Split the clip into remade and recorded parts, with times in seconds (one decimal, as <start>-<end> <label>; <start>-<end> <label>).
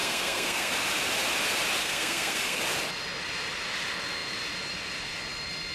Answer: 0.0-0.7 remade; 0.7-1.8 recorded; 1.8-2.6 remade; 2.6-5.7 recorded